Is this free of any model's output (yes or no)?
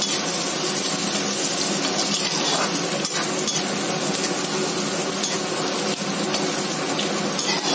yes